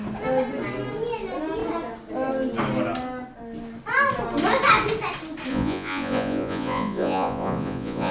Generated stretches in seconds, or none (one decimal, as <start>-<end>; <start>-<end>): 5.5-8.1